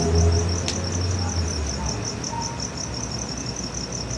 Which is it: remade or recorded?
recorded